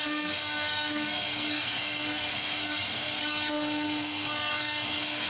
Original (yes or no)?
no